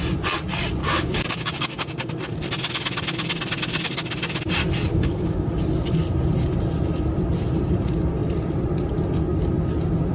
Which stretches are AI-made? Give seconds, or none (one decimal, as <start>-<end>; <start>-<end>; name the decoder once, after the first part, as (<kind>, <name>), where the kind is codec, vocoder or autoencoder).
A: 0.8-2.1 (codec, DAC); 4.9-5.5